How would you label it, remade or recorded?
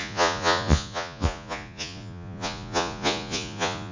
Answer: remade